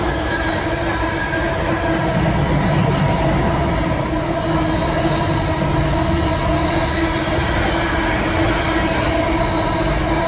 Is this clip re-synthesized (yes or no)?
no